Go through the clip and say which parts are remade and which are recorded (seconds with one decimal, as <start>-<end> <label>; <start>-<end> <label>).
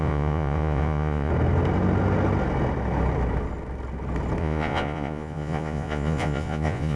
0.0-1.3 remade; 1.3-4.4 recorded; 4.4-7.0 remade